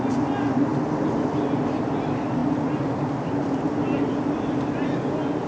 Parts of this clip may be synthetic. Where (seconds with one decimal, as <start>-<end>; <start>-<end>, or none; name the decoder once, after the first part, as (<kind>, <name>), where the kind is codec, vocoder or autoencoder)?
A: none